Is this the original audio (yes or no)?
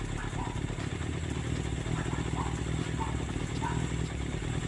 yes